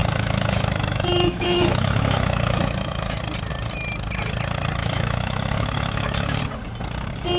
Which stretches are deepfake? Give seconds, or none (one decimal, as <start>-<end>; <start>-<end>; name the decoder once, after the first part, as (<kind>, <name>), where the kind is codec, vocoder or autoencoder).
0.0-3.2 (autoencoder, DAC-VAE); 4.8-6.4